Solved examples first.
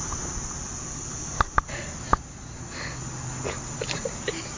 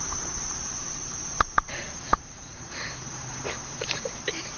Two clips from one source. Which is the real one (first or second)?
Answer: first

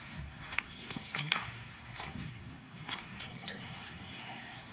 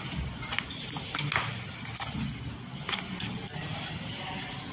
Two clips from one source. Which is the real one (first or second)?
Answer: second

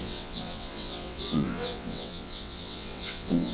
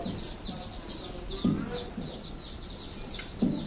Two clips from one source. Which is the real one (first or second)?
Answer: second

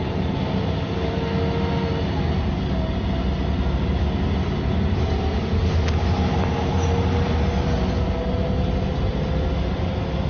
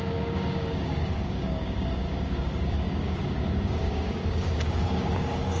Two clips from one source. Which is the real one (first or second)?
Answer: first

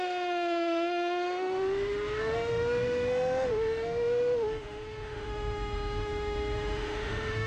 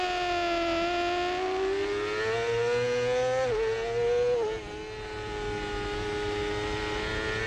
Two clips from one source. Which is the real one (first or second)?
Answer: second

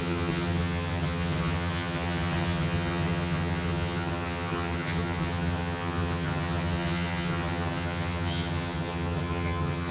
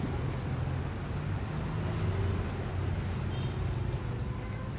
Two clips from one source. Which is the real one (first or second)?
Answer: second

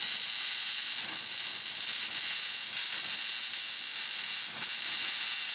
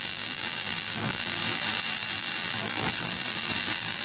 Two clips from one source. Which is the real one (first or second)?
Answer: first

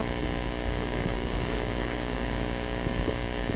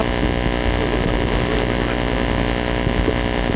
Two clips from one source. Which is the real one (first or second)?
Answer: second